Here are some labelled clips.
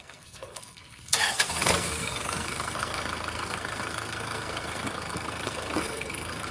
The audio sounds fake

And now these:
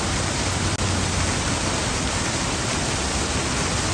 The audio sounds real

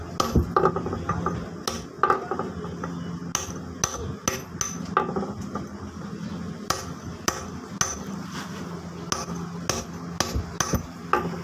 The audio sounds real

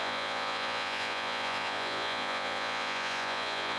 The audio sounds fake